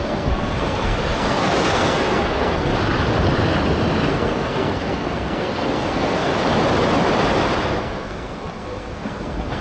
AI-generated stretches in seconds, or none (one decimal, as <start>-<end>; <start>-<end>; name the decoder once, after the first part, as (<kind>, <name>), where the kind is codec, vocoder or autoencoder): 0.0-2.7 (codec, SNAC); 4.1-6.3; 7.8-9.6